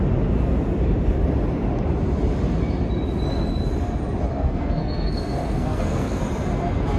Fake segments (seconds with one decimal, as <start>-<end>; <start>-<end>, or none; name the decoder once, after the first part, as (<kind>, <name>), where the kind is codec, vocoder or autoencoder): 4.3-6.2 (codec, SNAC)